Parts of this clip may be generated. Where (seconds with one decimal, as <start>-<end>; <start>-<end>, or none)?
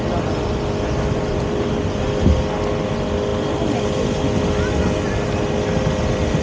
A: none